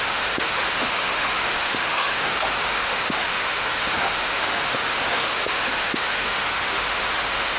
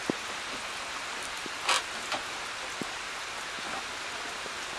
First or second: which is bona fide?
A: second